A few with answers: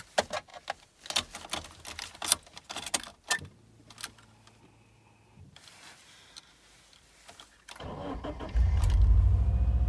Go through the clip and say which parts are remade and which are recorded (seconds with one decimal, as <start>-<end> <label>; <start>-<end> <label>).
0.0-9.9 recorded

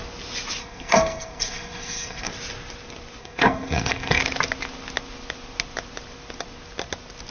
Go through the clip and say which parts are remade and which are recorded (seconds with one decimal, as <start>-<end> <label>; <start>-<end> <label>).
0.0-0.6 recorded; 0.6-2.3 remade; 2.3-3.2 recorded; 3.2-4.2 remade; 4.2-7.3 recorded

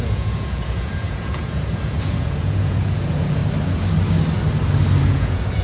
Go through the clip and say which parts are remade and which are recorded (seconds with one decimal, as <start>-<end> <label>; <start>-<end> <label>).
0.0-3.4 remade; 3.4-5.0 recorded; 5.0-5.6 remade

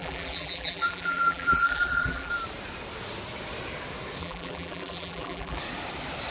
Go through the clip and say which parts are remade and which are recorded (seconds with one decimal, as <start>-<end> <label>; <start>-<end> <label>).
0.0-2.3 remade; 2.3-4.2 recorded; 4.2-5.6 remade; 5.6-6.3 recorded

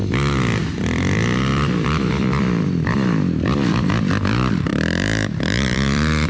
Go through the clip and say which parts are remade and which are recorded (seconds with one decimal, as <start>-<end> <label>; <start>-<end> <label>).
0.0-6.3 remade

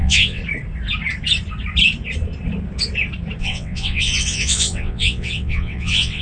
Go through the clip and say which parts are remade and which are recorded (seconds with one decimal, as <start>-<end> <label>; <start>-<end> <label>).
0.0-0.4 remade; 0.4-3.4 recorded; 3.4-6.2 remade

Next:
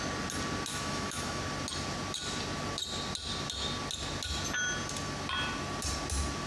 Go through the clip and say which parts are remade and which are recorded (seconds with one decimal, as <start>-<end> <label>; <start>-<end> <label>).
0.0-0.7 recorded; 0.7-1.4 remade; 1.4-6.5 recorded